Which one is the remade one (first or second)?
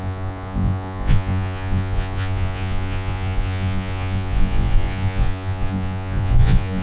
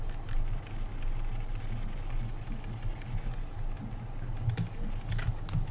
first